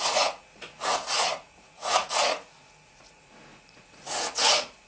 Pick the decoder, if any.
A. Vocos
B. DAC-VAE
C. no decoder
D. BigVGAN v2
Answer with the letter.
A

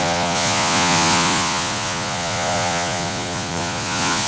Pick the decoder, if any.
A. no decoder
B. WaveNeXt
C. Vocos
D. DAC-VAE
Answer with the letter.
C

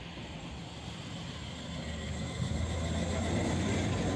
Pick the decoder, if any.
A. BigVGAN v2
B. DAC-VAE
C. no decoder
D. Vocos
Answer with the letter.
C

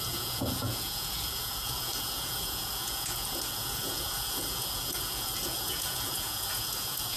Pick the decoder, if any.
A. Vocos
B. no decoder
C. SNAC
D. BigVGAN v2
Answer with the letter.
A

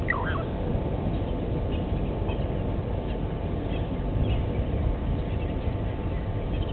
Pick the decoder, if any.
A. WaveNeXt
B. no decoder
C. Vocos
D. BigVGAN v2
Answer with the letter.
B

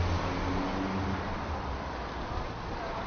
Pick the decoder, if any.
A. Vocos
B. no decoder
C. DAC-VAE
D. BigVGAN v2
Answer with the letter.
B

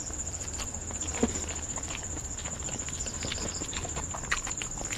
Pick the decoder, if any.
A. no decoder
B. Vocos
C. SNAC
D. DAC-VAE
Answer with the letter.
A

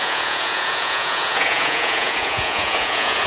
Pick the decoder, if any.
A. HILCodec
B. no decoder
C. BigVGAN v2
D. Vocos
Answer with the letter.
D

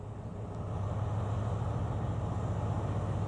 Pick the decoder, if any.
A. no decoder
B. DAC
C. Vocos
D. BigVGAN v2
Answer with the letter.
A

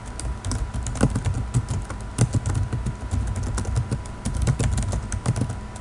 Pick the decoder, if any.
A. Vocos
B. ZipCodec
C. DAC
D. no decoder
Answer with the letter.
D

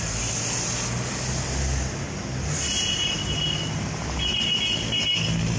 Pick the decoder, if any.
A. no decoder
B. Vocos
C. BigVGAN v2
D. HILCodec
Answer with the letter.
A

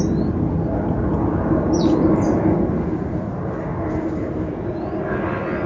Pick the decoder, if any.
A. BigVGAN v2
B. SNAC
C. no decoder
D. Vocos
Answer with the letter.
C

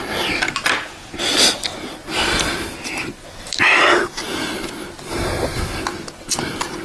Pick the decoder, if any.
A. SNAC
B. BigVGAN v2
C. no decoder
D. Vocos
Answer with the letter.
C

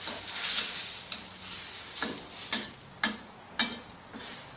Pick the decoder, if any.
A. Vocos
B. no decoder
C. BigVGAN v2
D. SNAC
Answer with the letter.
B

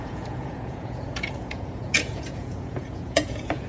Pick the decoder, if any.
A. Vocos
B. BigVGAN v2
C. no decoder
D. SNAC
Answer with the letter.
A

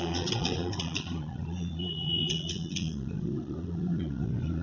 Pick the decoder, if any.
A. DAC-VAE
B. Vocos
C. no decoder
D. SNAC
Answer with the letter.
B